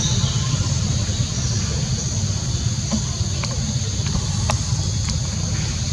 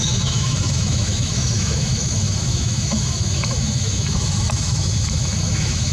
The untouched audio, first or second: first